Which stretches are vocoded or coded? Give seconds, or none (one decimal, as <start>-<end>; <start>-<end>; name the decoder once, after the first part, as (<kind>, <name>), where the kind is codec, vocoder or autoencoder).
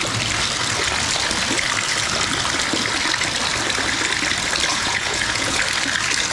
4.7-5.6 (vocoder, Vocos)